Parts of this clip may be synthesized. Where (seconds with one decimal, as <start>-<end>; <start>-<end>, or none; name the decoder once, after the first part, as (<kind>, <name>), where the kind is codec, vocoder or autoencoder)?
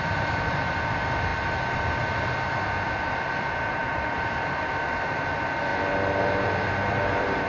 0.0-1.3 (vocoder, BigVGAN v2); 3.1-5.7; 6.9-7.5